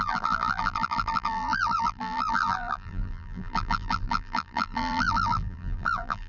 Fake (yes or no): yes